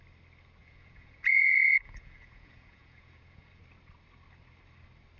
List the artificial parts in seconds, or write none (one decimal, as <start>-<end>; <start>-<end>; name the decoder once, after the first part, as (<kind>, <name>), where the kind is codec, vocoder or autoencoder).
0.6-3.6 (vocoder, Vocos)